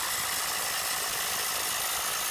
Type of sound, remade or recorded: recorded